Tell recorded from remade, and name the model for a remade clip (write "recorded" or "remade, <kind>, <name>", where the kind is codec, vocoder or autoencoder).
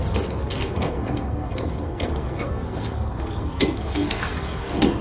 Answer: remade, codec, SNAC